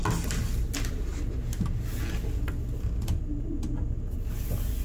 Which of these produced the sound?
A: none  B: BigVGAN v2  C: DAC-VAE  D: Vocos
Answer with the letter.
A